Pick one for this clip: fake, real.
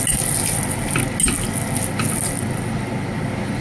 real